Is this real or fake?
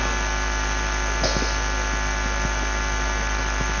real